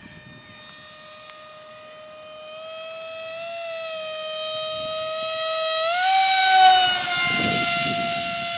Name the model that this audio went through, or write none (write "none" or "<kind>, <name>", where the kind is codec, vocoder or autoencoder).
none